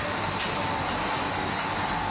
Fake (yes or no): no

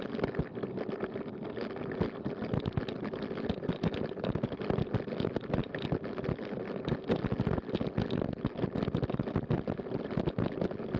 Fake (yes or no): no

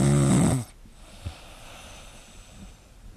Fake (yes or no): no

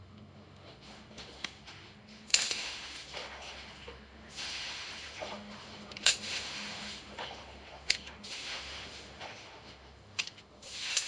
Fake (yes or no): yes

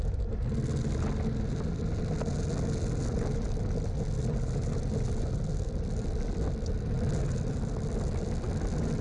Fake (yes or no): no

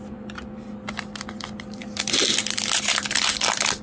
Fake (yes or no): no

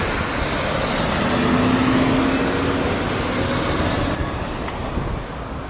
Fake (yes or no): no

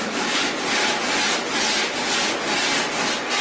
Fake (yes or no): no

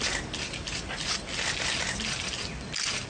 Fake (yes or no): no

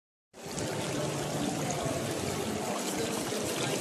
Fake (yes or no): no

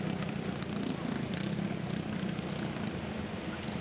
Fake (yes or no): no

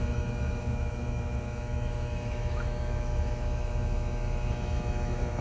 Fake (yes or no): yes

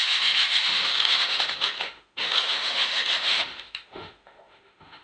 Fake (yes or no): yes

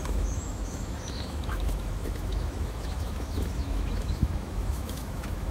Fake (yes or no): yes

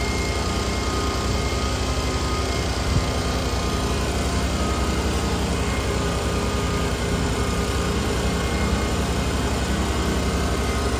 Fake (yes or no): no